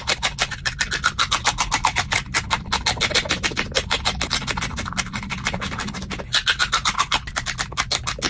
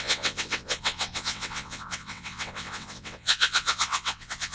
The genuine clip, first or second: first